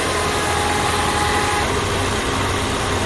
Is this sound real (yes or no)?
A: yes